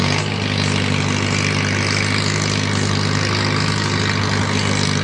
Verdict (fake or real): real